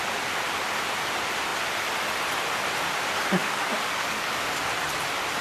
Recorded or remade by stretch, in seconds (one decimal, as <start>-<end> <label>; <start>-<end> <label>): 0.0-3.4 recorded; 3.4-4.6 remade; 4.6-5.4 recorded